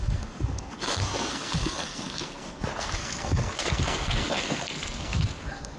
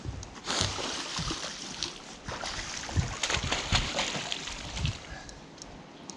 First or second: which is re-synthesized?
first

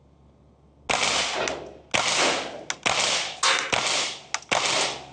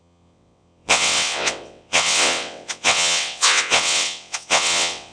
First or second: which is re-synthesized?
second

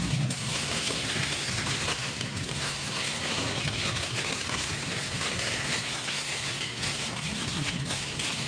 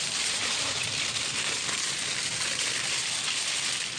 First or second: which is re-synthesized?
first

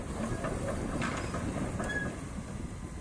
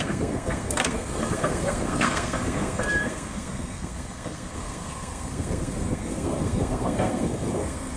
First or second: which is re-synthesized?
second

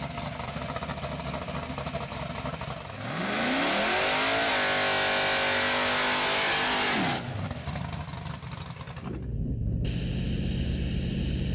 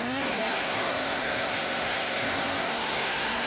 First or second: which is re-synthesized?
second